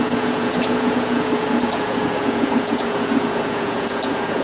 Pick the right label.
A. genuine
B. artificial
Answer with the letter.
B